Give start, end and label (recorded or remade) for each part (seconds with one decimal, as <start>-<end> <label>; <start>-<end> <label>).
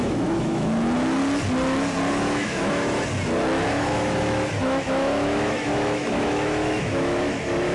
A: 0.0-1.2 remade; 1.2-2.1 recorded; 2.1-3.1 remade; 3.1-3.7 recorded; 3.7-7.7 remade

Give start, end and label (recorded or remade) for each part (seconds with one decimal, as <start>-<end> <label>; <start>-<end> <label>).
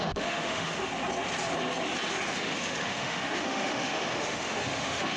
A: 0.0-0.9 remade; 0.9-2.3 recorded; 2.3-5.2 remade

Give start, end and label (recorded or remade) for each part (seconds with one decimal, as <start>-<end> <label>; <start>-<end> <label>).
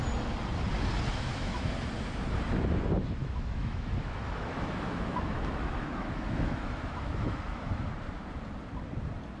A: 0.0-1.1 recorded; 1.1-1.7 remade; 1.7-3.2 recorded; 3.2-7.9 remade; 7.9-9.4 recorded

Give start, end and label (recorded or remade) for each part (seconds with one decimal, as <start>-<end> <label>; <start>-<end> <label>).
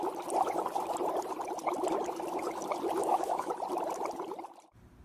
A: 0.0-3.0 recorded; 3.0-3.5 remade; 3.5-5.0 recorded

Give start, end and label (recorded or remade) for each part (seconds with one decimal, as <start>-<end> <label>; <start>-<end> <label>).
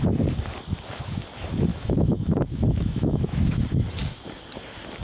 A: 0.0-1.7 recorded; 1.7-3.6 remade; 3.6-5.0 recorded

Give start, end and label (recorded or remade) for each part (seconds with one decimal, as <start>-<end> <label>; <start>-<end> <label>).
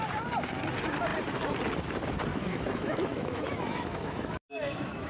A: 0.0-2.3 recorded; 2.3-5.1 remade